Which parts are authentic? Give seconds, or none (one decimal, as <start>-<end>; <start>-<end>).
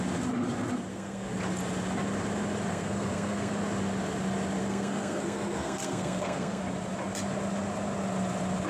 0.0-0.9; 1.4-2.7; 3.5-4.6; 6.6-8.7